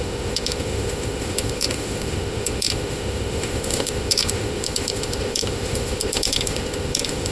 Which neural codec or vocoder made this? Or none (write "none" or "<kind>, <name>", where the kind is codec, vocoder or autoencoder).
autoencoder, DAC-VAE